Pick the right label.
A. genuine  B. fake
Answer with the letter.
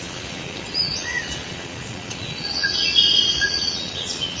B